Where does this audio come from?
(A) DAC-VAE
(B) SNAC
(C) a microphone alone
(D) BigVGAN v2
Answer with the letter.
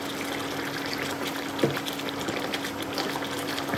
C